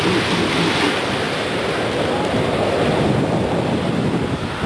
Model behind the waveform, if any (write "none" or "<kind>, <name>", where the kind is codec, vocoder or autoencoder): none